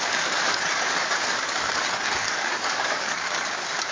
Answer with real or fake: fake